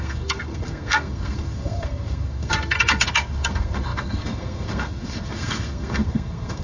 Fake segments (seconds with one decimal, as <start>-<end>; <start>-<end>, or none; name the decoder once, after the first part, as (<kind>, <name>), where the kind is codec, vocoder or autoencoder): 0.0-6.6 (codec, SNAC)